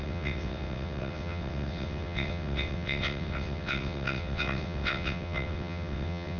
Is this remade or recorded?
remade